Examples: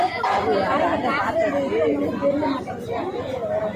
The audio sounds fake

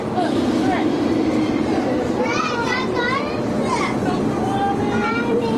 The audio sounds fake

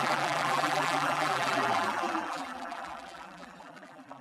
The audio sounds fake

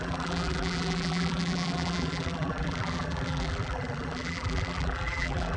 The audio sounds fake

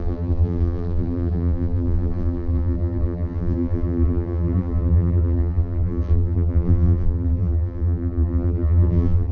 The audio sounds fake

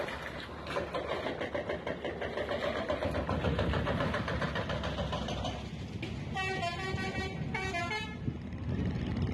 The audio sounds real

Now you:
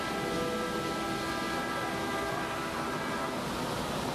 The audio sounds real